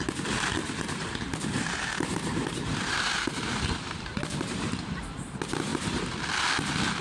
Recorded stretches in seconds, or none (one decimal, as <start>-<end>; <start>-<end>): 0.0-0.6; 4.8-5.7; 6.2-7.0